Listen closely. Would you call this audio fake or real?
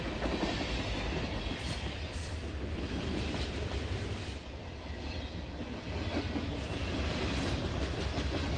real